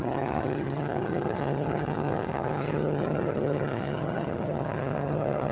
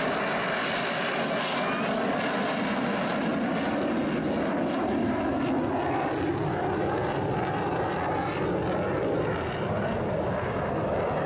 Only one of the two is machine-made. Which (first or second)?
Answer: first